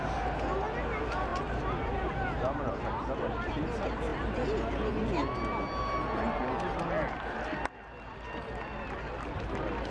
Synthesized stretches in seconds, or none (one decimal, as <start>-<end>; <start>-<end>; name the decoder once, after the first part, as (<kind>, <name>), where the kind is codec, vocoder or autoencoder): none